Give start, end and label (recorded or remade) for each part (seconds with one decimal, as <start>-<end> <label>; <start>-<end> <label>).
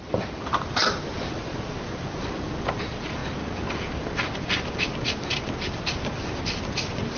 0.0-3.2 remade; 3.2-6.6 recorded; 6.6-7.2 remade